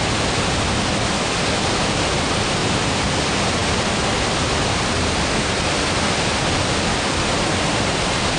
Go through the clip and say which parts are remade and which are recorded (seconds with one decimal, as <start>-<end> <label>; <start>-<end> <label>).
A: 0.0-2.6 recorded; 2.6-3.1 remade; 3.1-8.4 recorded